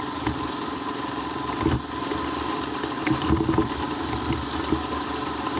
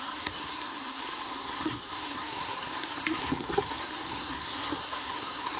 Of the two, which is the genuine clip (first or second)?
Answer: first